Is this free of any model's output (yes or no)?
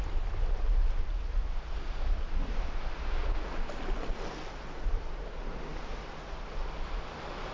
yes